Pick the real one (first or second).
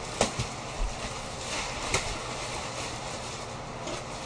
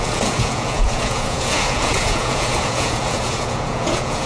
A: first